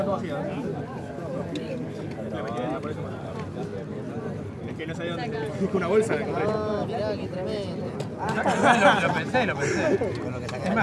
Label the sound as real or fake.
real